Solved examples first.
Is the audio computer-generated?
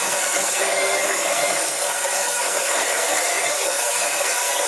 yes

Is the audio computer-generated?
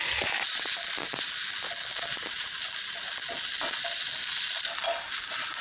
no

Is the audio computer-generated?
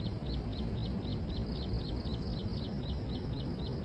no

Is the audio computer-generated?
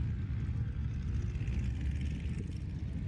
no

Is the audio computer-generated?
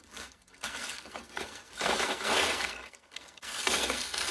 yes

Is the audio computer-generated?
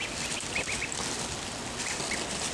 no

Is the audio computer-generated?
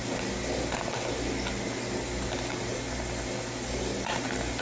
no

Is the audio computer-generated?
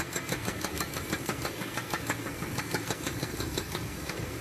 yes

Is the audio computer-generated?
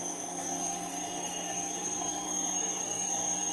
yes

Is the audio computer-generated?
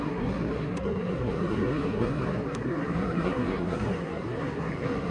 yes